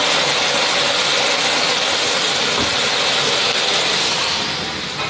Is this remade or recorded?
recorded